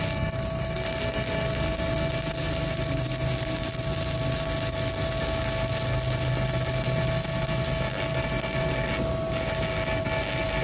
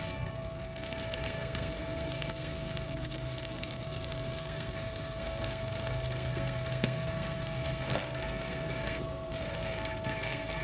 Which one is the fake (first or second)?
second